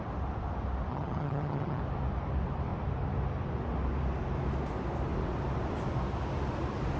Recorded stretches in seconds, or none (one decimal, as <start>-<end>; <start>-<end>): 0.0-0.9; 1.8-7.0